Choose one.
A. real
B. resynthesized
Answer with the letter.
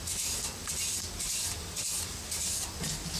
A